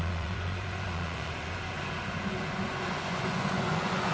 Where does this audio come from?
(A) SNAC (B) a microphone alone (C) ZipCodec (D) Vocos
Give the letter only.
D